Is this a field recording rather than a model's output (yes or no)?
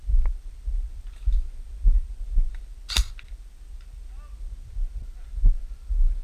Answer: yes